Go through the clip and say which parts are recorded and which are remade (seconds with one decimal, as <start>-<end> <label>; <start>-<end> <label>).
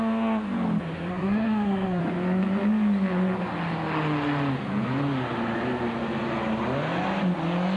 0.0-1.1 recorded; 1.1-2.0 remade; 2.0-7.8 recorded